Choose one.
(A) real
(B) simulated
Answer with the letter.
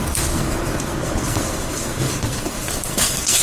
B